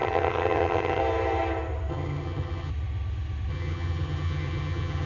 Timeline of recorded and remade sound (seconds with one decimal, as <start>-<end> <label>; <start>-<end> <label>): 0.0-1.0 remade; 1.0-1.9 recorded; 1.9-2.7 remade; 2.7-3.5 recorded; 3.5-5.1 remade